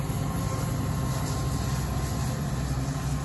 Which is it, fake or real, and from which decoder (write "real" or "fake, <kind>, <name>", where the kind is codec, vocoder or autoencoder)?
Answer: real